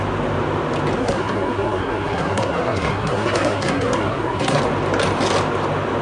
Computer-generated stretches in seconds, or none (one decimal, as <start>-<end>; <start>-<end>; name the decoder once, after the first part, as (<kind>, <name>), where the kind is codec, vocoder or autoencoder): 1.0-4.6 (codec, SNAC)